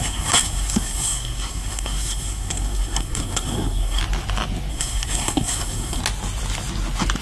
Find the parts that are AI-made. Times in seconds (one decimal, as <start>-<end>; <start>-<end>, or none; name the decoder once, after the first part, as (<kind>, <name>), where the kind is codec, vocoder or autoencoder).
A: 0.0-4.0 (codec, SNAC); 4.7-6.0